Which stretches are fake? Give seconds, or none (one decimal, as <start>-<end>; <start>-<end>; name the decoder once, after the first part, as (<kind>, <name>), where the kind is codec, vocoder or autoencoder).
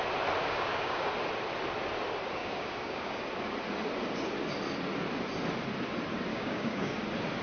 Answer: 0.4-1.1 (codec, DAC); 2.4-3.2; 6.3-6.9